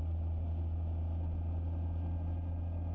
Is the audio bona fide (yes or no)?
yes